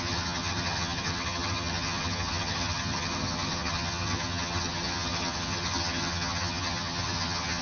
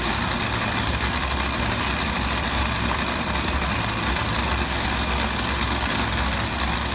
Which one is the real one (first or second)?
second